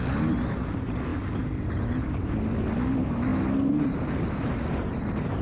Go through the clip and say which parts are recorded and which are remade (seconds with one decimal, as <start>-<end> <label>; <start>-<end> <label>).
0.0-5.4 recorded